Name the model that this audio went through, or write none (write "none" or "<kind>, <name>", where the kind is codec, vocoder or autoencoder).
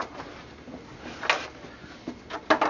none